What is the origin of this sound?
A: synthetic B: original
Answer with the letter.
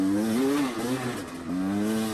B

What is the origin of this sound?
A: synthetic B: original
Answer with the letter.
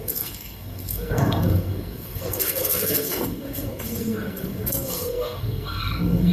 A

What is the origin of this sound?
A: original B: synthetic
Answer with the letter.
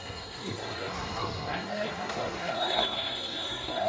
B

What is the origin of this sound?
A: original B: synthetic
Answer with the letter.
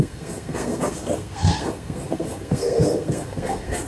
B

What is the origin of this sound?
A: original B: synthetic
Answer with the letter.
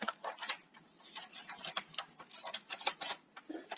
A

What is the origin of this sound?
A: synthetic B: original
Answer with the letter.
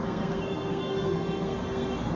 A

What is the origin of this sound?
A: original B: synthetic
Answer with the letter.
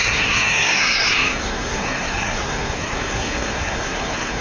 B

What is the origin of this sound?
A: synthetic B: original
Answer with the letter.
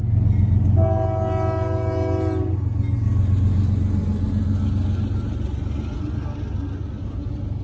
B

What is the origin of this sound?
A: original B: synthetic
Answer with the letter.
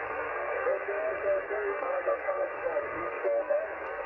B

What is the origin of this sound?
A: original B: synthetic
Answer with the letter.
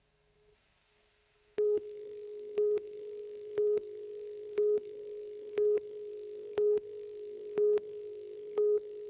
B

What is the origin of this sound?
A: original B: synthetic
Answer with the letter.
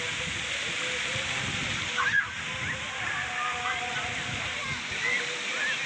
A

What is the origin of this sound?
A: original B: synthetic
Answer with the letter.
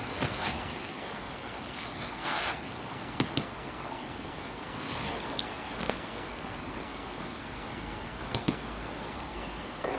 B